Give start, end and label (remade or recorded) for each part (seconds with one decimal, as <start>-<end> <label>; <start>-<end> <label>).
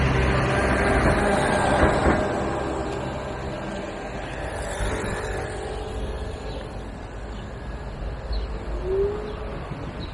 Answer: 0.0-10.1 recorded